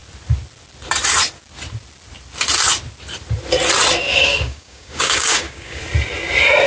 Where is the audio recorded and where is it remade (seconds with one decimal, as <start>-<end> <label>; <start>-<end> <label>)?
0.0-4.0 recorded; 4.0-5.8 remade; 5.8-6.7 recorded